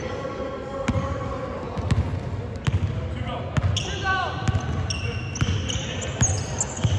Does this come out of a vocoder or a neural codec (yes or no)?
no